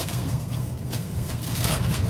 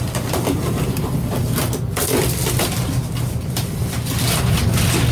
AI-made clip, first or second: first